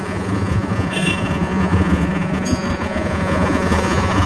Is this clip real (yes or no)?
no